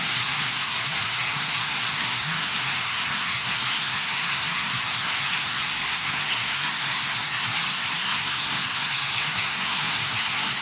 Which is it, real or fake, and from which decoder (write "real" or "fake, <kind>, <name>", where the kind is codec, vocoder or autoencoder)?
fake, codec, SNAC